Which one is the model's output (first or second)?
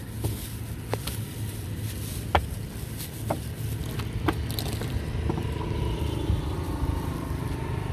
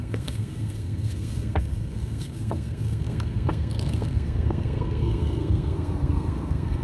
second